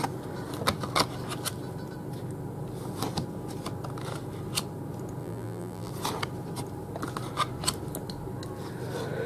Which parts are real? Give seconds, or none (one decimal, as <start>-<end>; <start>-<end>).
0.0-5.2; 5.9-9.3